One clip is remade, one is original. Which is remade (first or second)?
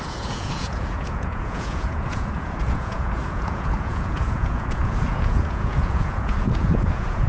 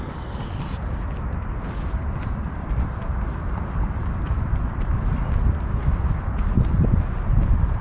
first